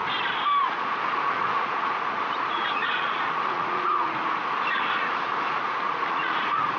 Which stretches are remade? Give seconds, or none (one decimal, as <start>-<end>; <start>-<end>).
0.6-6.8